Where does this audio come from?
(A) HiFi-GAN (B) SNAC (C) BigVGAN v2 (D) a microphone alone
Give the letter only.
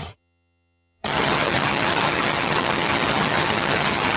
A